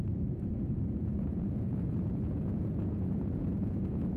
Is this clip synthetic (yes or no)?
yes